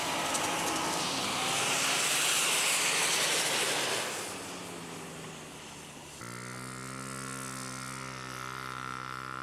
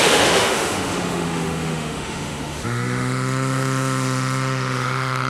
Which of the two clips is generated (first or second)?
second